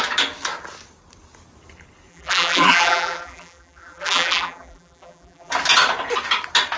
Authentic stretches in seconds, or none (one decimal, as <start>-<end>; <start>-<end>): 0.0-2.1; 5.5-6.8

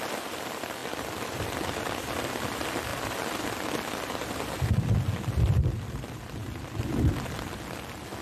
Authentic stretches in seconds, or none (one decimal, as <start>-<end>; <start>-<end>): 0.0-0.8; 1.5-8.2

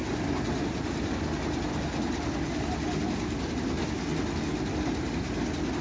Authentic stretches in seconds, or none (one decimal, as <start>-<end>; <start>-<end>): 0.0-5.8

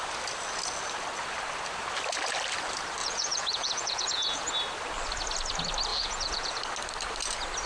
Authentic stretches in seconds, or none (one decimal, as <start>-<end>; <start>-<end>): 0.0-3.0; 4.5-5.9; 6.6-7.7

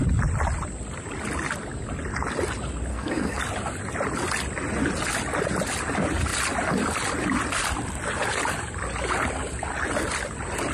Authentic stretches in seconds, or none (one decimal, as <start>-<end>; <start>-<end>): 0.0-2.9; 3.4-10.7

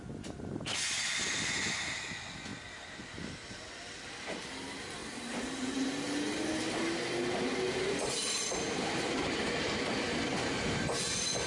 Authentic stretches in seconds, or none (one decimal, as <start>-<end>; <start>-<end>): 0.0-5.0; 5.9-7.7; 9.4-11.5

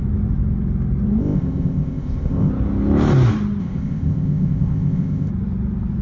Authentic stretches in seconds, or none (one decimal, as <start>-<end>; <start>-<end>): 0.0-1.2; 2.5-3.6; 5.3-6.0